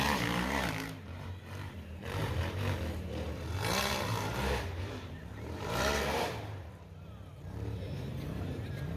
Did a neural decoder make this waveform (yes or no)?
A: yes